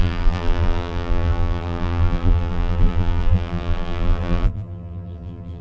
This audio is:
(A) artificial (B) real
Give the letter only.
A